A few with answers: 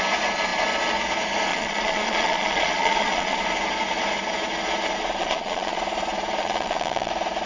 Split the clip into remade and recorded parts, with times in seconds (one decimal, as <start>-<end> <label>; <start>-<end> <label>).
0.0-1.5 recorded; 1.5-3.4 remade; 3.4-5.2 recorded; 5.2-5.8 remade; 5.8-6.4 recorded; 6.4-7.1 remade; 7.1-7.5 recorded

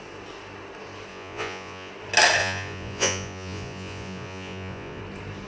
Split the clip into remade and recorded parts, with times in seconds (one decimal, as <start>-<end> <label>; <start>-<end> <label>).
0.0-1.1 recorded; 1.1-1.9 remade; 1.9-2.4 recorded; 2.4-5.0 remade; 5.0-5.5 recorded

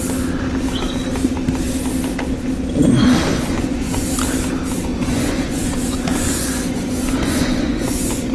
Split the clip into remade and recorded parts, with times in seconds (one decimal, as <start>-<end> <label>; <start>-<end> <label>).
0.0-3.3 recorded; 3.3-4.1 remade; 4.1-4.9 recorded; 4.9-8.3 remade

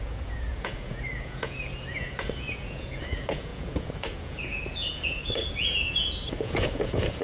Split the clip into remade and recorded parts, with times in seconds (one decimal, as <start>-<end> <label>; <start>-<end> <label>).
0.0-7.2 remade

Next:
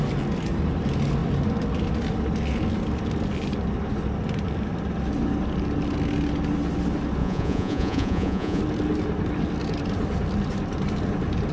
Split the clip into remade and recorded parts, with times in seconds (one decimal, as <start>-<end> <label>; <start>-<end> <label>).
0.0-7.2 recorded; 7.2-8.6 remade; 8.6-11.5 recorded